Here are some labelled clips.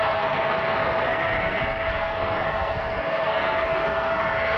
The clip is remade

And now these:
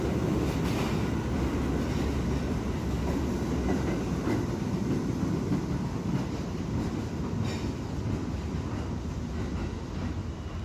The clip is recorded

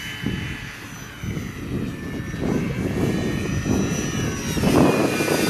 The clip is recorded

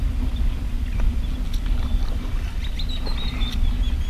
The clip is recorded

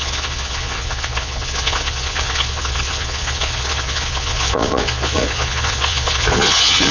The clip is remade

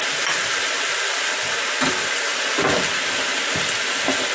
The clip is recorded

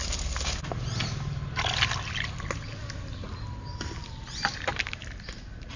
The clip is recorded